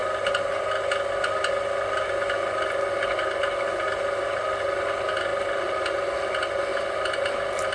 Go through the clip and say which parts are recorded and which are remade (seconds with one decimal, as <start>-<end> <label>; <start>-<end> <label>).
0.0-6.7 recorded; 6.7-7.3 remade; 7.3-7.7 recorded